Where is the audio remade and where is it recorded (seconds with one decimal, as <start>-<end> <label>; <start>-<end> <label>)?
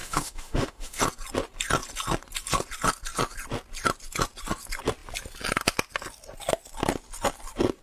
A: 0.0-1.0 remade; 1.0-7.8 recorded